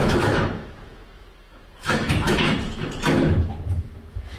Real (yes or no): no